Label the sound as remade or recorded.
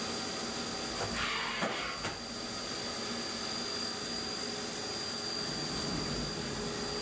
recorded